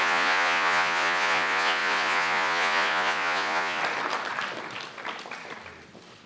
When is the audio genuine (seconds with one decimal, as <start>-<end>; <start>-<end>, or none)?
3.8-6.3